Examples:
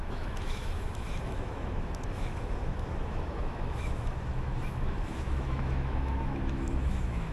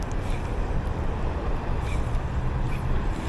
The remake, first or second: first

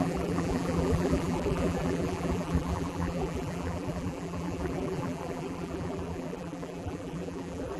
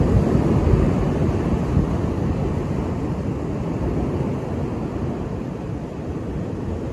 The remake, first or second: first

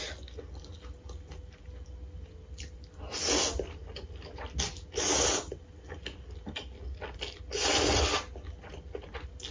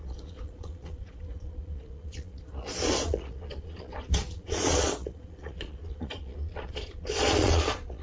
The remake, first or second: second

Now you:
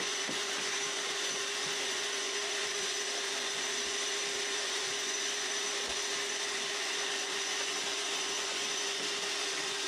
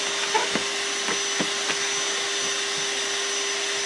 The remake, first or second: first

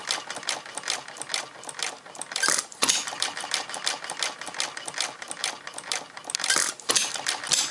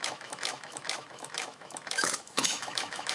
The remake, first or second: second